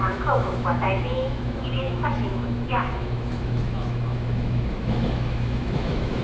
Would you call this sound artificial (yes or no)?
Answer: yes